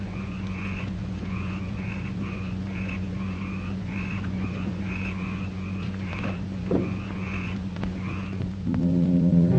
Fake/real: fake